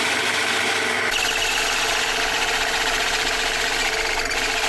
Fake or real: real